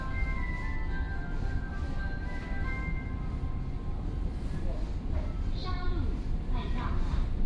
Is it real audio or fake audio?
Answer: real